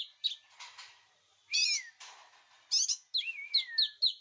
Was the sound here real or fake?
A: real